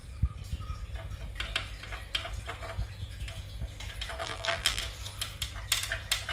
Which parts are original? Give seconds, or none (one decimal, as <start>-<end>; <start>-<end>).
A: 0.0-4.2; 4.8-6.3